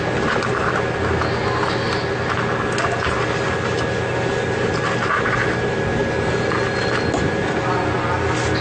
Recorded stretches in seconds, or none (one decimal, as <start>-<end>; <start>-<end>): 0.0-8.6